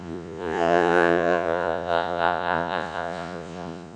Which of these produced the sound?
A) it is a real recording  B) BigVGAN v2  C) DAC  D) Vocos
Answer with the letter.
D